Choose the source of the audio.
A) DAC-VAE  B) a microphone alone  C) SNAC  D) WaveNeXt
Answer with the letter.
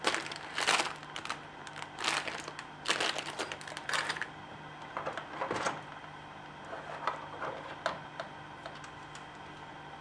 B